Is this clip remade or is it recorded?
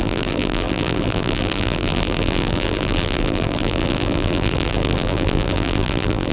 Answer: remade